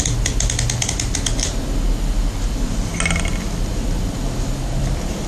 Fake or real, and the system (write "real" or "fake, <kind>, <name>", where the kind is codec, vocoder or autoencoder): real